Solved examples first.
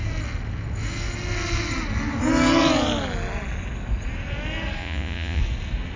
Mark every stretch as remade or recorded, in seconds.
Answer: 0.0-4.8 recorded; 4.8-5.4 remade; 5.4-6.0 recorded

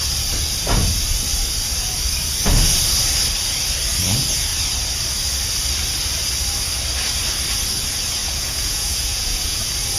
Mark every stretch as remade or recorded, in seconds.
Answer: 0.0-8.2 recorded; 8.2-9.6 remade; 9.6-10.0 recorded

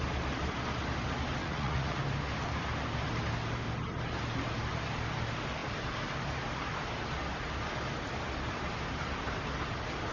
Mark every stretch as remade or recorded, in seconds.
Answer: 0.0-1.4 recorded; 1.4-2.0 remade; 2.0-10.1 recorded

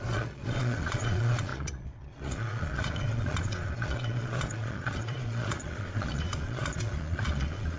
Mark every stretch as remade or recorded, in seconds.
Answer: 0.0-7.8 remade